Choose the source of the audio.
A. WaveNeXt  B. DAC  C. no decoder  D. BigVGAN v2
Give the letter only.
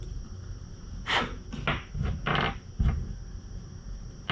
C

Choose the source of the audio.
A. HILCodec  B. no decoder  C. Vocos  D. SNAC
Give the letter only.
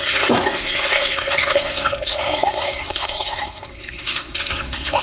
D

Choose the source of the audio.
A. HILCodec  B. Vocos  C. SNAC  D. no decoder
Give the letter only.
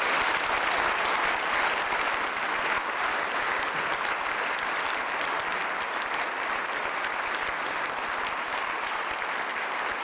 D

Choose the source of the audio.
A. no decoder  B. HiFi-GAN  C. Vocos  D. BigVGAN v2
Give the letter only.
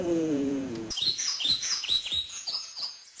C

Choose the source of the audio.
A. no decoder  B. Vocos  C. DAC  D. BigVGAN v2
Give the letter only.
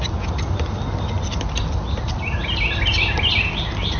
A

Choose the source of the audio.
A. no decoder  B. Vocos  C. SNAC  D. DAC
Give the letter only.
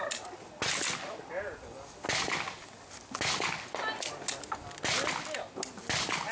A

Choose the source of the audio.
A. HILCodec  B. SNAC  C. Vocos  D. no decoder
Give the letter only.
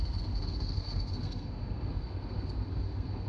B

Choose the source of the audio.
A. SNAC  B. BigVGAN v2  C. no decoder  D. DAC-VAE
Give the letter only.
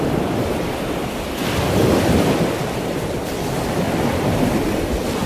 C